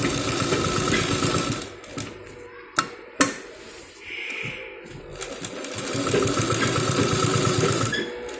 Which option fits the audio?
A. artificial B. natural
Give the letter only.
B